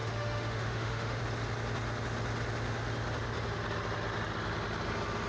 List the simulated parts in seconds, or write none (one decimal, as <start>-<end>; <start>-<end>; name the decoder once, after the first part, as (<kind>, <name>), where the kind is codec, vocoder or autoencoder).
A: 0.0-1.2 (autoencoder, DAC-VAE)